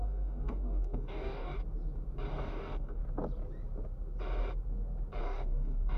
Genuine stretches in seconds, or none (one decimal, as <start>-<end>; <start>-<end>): 1.6-2.3; 3.0-5.2